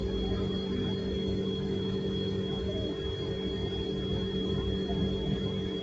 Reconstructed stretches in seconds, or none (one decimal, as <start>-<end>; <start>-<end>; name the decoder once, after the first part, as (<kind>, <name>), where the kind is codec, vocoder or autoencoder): 1.0-2.9 (autoencoder, DAC-VAE)